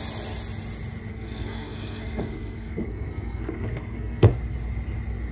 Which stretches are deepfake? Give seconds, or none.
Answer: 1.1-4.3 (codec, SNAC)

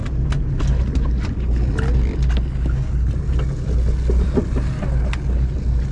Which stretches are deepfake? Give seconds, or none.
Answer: none